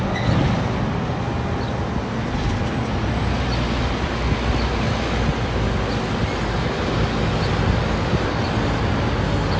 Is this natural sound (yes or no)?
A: yes